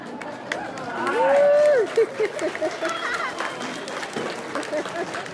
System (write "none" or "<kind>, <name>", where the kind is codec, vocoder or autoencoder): none